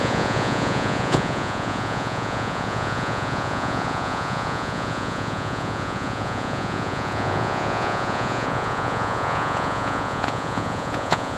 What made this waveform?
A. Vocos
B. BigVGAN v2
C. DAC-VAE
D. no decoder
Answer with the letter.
A